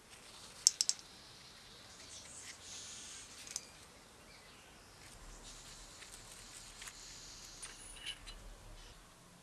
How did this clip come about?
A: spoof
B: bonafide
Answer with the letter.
B